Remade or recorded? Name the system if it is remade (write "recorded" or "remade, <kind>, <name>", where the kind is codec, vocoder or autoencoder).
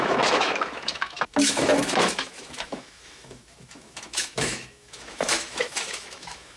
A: remade, autoencoder, DAC-VAE